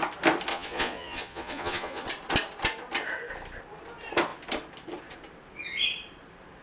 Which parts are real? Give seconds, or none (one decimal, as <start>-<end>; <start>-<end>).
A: 0.0-0.5; 2.0-6.6